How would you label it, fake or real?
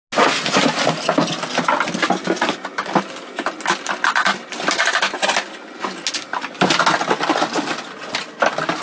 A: real